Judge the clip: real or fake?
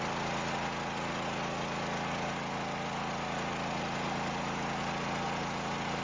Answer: real